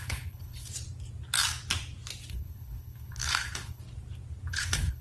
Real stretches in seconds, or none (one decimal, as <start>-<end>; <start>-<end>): 0.7-2.3; 3.8-4.5